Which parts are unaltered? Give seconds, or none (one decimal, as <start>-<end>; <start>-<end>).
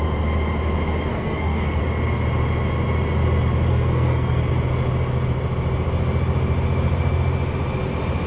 0.0-1.1; 1.8-3.7; 4.4-8.3